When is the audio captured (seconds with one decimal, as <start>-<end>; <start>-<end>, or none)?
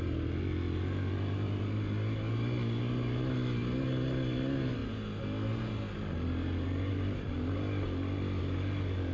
0.0-9.1